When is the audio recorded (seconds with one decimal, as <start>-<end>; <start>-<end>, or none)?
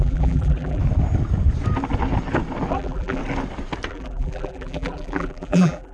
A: 0.8-2.7; 3.2-3.9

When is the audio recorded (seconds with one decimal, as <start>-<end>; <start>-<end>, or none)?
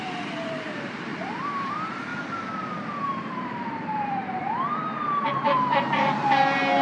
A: 2.1-3.0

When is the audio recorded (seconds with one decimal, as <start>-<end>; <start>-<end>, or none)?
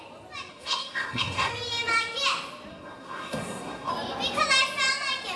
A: 0.0-0.5; 1.5-2.7; 3.9-5.4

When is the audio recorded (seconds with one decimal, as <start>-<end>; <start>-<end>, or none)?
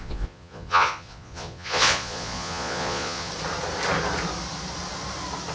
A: 3.3-5.5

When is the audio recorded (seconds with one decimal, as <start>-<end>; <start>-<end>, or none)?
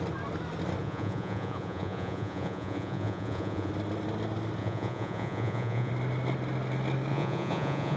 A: 0.0-0.8; 3.7-4.6; 5.9-7.1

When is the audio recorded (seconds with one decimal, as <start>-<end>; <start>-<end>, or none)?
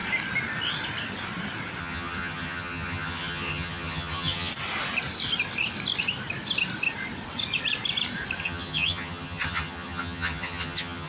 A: 0.0-1.8; 4.5-8.4